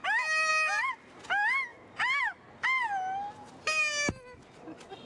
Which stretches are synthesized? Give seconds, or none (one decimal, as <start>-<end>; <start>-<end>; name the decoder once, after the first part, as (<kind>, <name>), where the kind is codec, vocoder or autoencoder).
none